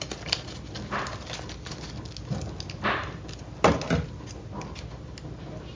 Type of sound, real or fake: real